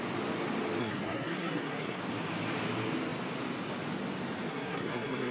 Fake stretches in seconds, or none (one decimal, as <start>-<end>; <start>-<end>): 0.8-2.0; 4.5-5.3